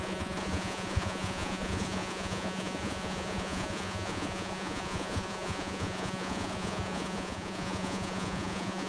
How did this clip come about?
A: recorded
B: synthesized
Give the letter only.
B